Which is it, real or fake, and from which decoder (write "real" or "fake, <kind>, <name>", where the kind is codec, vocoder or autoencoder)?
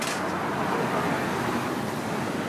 real